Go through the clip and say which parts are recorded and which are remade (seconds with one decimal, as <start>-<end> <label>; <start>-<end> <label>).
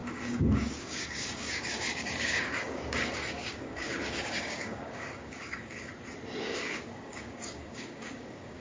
0.0-5.9 remade; 5.9-6.4 recorded; 6.4-8.6 remade